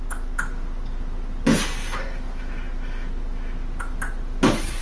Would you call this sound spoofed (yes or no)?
no